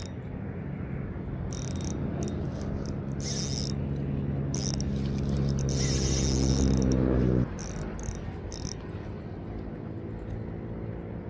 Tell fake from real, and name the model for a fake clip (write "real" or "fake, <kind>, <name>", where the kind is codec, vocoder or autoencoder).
real